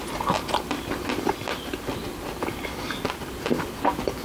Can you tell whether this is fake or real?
real